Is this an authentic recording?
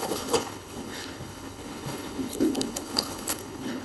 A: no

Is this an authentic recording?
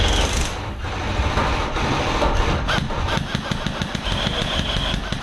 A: yes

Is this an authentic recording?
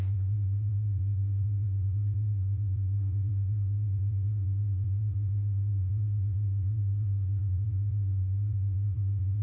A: no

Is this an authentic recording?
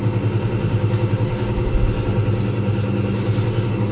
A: yes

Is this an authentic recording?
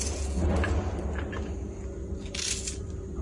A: yes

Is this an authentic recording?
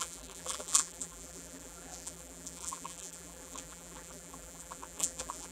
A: no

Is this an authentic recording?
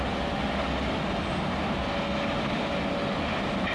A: yes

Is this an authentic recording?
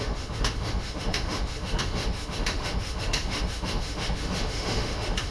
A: no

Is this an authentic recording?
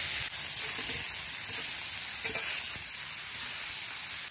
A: yes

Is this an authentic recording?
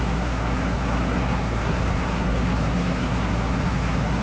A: no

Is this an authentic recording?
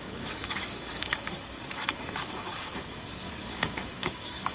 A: no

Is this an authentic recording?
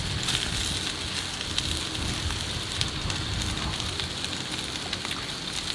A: yes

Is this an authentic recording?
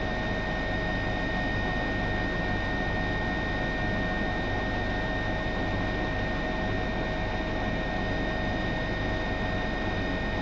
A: yes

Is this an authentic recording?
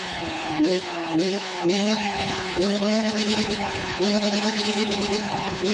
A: no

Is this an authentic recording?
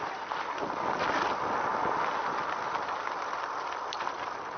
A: yes